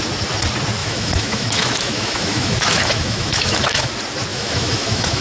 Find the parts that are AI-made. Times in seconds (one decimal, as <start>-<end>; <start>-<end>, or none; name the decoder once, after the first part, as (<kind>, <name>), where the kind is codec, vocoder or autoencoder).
0.8-3.9 (autoencoder, DAC-VAE); 4.3-5.2